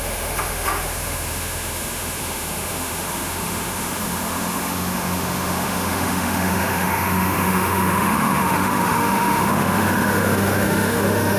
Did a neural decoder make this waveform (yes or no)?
yes